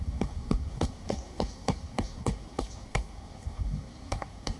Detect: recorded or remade remade